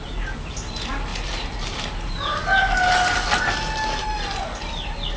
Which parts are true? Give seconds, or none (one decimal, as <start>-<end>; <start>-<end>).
0.0-5.2